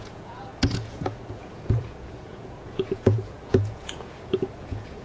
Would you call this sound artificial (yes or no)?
yes